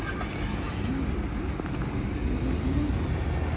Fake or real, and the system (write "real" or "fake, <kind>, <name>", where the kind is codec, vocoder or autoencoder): real